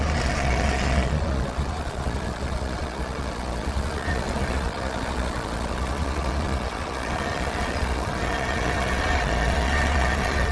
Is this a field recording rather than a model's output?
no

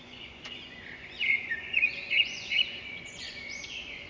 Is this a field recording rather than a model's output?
no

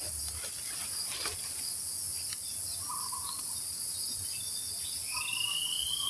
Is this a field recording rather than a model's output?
yes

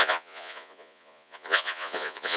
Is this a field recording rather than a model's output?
no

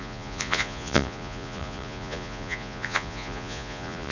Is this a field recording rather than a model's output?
no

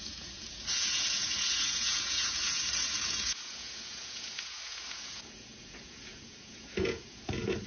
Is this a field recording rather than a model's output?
no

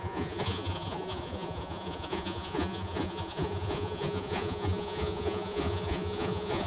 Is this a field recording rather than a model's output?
no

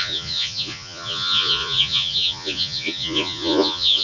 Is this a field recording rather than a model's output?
no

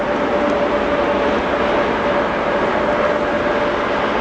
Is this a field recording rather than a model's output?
yes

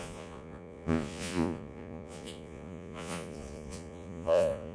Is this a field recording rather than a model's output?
no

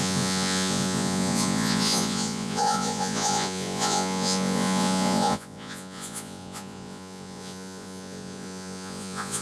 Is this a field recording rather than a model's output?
no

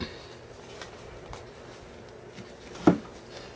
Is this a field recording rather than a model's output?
yes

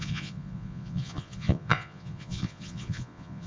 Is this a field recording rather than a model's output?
no